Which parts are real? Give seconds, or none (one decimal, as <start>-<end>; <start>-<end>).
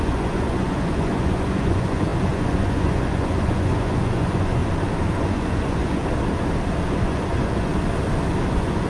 4.6-5.2; 6.0-6.9; 7.7-8.5